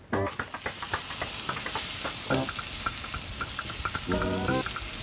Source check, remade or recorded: recorded